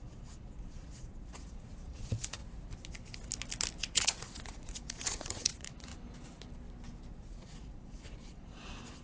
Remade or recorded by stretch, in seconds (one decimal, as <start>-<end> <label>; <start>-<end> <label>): 0.0-2.4 remade; 2.4-3.8 recorded; 3.8-5.9 remade; 5.9-7.1 recorded; 7.1-9.0 remade